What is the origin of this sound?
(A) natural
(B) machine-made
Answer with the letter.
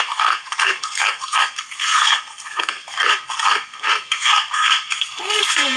B